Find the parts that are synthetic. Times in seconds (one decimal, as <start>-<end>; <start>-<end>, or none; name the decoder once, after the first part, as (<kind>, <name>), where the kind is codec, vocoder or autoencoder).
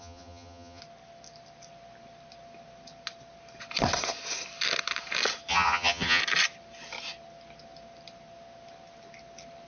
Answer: 0.0-0.8 (vocoder, HiFi-GAN); 5.5-6.2